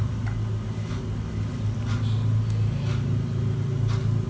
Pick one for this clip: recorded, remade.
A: recorded